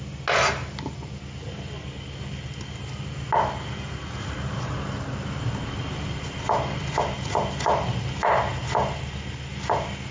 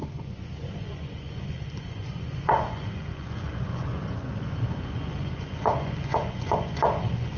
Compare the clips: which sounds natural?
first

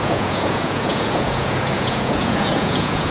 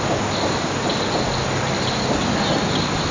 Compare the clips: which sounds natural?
second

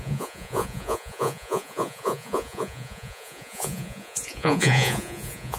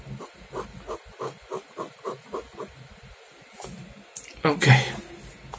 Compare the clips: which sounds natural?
second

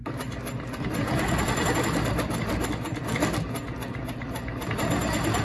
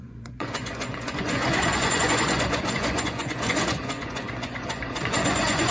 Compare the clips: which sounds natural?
first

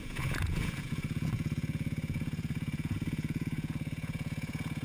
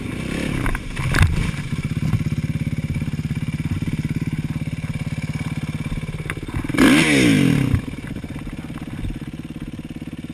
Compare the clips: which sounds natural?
second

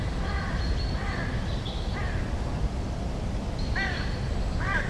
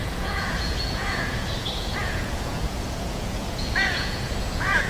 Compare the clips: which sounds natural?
first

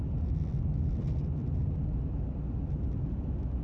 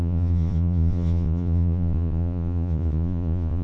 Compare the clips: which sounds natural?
first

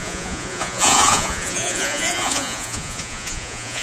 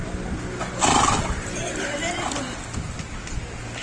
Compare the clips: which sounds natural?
second